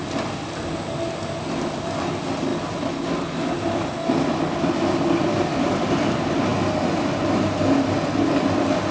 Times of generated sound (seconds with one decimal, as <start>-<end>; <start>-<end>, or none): none